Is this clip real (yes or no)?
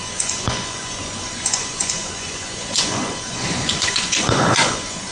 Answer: no